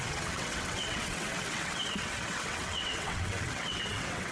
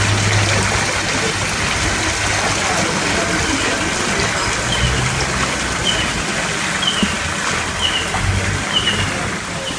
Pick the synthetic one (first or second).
first